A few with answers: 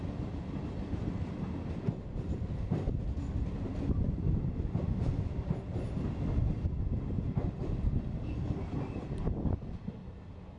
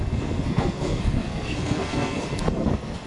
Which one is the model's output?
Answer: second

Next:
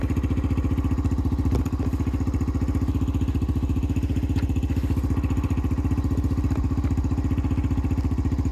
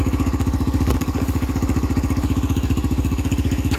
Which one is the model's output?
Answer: second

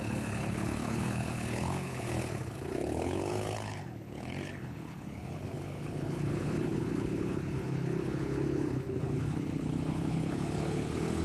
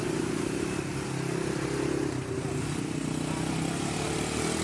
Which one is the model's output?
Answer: first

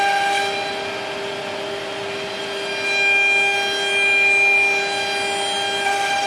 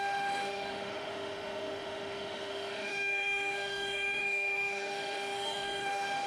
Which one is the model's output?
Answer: second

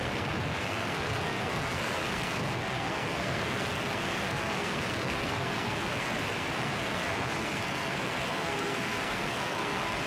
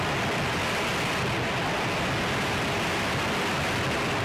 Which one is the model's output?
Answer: first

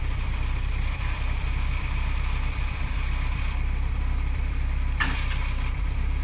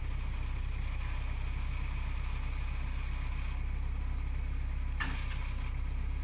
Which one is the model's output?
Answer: first